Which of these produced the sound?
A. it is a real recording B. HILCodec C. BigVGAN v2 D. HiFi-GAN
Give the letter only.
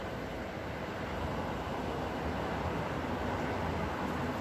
A